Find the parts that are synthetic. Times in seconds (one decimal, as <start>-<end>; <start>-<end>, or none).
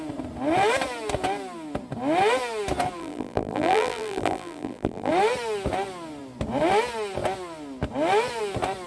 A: 3.0-5.1